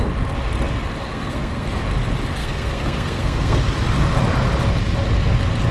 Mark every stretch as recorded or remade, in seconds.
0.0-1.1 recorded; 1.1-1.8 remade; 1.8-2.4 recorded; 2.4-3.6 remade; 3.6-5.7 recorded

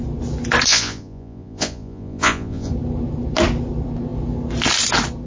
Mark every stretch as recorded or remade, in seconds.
0.0-0.7 recorded; 0.7-2.7 remade; 2.7-5.3 recorded

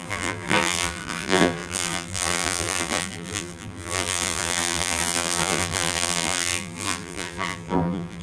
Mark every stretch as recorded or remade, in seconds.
0.0-8.2 remade

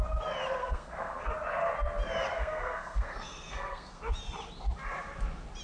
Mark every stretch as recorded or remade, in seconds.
0.0-0.6 recorded; 0.6-1.3 remade; 1.3-2.3 recorded; 2.3-4.0 remade; 4.0-5.6 recorded

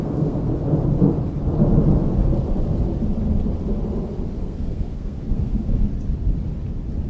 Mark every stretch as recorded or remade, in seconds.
0.0-0.5 remade; 0.5-4.4 recorded; 4.4-5.9 remade; 5.9-7.1 recorded

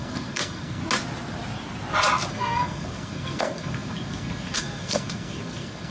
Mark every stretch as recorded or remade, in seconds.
0.0-0.8 remade; 0.8-2.3 recorded; 2.3-5.9 remade